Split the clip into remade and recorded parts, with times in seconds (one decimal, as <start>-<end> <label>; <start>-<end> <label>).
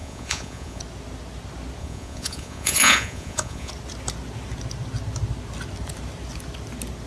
0.0-0.8 remade; 0.8-1.8 recorded; 1.8-3.7 remade; 3.7-7.1 recorded